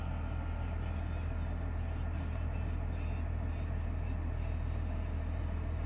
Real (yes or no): yes